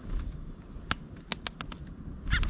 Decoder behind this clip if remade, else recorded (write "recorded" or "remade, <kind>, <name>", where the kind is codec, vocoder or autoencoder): recorded